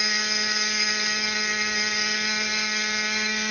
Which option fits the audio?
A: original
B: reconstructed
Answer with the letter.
B